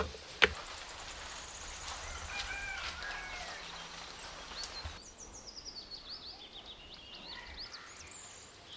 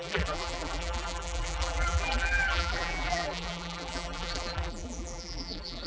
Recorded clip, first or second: first